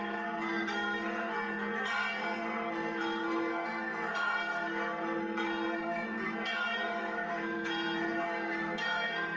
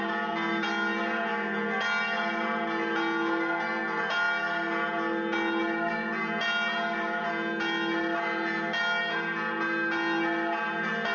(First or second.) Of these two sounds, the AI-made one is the first